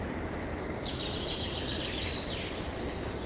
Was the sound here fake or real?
real